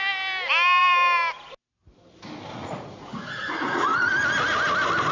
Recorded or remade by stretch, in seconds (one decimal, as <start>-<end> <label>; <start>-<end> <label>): 0.0-2.6 recorded; 2.6-4.1 remade; 4.1-5.1 recorded